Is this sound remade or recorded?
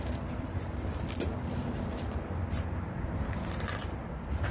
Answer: remade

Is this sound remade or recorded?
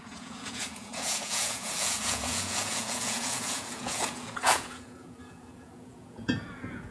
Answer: remade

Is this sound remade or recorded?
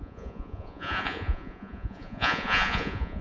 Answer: remade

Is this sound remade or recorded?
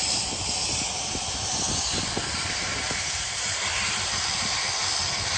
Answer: remade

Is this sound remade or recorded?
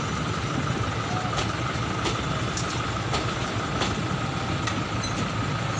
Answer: recorded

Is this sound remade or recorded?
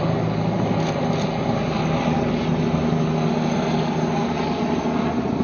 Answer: recorded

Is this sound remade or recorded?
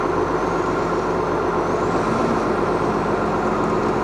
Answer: recorded